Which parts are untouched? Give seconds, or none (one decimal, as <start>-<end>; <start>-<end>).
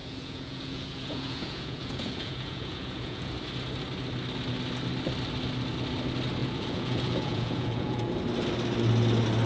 3.3-6.4; 8.2-9.5